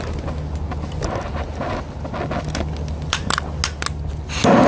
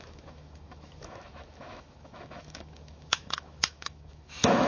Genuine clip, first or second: first